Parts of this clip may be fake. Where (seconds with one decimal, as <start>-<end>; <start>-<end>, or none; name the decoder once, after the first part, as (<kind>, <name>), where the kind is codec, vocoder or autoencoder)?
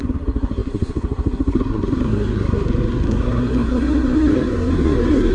0.0-5.3 (codec, SNAC)